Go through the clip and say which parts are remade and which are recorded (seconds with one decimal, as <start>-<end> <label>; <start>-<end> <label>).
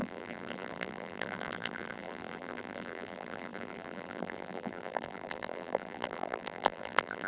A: 0.0-7.3 remade